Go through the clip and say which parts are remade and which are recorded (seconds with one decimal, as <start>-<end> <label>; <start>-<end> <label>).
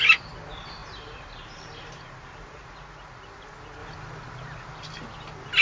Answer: 0.0-0.8 recorded; 0.8-2.7 remade; 2.7-5.6 recorded